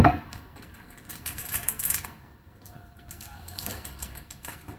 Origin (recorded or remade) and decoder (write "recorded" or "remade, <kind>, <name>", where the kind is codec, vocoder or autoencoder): remade, codec, SNAC